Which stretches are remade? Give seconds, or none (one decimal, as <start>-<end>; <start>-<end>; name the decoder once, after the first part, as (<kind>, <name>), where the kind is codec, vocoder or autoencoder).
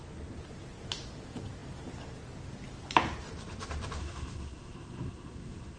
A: 4.0-5.8 (codec, SNAC)